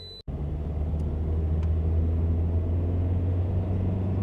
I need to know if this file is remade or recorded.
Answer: recorded